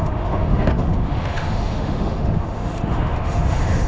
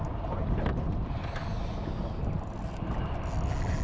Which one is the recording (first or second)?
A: second